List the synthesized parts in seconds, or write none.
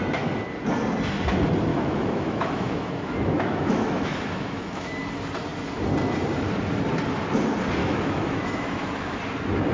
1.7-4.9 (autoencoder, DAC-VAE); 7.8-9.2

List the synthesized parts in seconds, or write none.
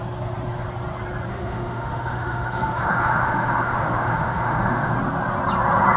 1.3-4.9 (autoencoder, DAC-VAE)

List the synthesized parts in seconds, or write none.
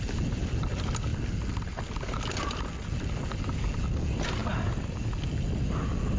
none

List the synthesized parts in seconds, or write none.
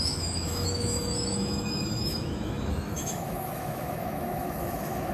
0.0-5.1 (autoencoder, DAC-VAE)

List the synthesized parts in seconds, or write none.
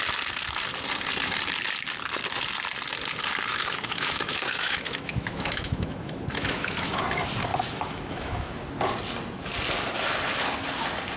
3.5-7.0 (autoencoder, DAC-VAE); 7.5-8.5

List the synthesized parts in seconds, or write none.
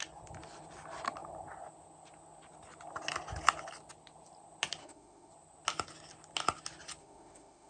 4.8-5.3 (autoencoder, DAC-VAE); 7.0-7.7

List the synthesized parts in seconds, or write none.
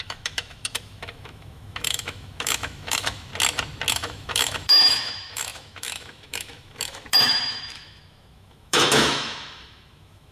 0.0-3.3 (autoencoder, DAC-VAE); 3.9-10.3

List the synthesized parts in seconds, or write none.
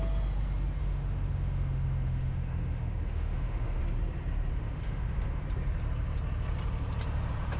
0.8-3.8 (autoencoder, DAC-VAE); 4.5-5.4